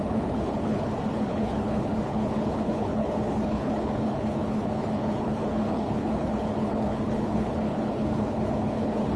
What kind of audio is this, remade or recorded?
remade